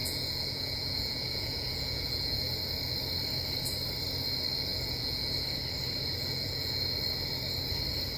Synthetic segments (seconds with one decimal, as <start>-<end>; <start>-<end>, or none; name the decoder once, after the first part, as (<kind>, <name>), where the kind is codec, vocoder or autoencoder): 0.0-2.5 (vocoder, Vocos); 4.7-5.3; 6.2-6.8